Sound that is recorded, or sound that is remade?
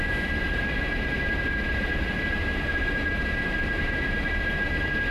remade